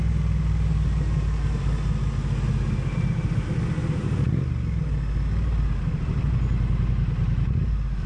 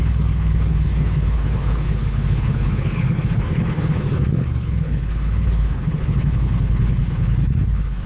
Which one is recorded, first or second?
first